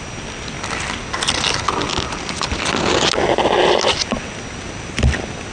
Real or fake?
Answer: real